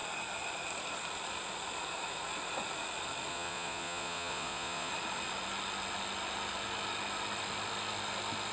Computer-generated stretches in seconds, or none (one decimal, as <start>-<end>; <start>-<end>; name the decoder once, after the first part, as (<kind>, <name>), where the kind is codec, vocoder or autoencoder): 3.3-4.9 (vocoder, Vocos)